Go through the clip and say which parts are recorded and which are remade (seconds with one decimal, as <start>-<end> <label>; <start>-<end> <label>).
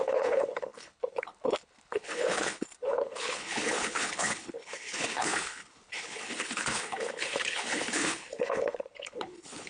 0.0-9.7 remade